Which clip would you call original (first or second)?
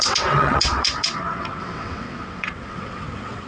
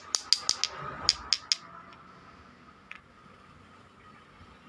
second